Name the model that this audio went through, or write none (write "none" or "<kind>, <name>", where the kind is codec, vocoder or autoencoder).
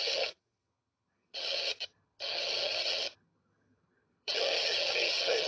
vocoder, HiFi-GAN